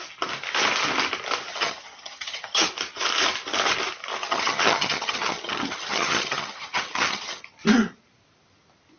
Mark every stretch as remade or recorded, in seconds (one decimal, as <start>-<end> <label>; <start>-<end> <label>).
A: 0.0-1.5 recorded; 1.5-2.7 remade; 2.7-4.2 recorded; 4.2-7.4 remade; 7.4-9.0 recorded